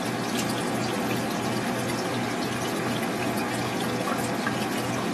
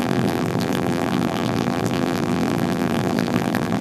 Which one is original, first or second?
first